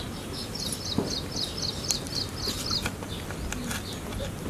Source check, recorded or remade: recorded